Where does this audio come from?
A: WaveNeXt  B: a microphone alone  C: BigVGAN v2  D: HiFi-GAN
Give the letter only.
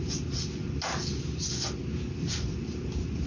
B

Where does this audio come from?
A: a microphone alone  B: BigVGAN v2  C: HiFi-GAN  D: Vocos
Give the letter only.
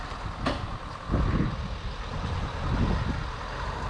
A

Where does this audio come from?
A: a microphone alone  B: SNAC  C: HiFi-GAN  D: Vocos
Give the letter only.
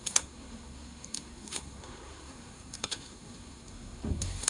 B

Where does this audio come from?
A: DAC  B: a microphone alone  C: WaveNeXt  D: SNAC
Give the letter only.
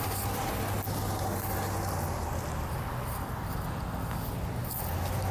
B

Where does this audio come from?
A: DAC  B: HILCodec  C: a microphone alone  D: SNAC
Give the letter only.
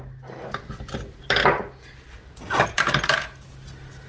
C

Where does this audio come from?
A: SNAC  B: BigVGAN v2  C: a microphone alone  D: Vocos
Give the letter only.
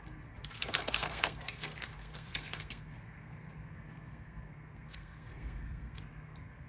A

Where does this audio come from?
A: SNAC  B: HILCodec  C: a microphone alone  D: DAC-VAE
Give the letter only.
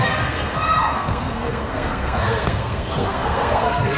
A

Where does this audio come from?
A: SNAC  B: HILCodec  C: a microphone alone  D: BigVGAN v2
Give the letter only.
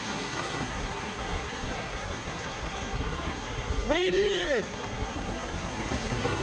A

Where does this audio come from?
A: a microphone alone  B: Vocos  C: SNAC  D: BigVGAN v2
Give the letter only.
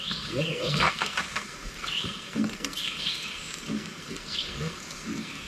C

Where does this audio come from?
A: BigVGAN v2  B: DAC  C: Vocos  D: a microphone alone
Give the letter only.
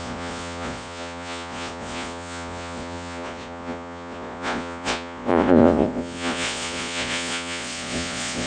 C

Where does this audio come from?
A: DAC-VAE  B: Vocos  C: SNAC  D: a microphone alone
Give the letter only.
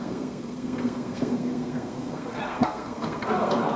C